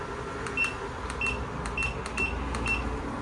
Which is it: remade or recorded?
recorded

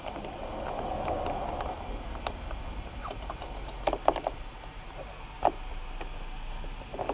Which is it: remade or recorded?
recorded